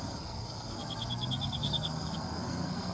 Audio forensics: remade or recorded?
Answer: remade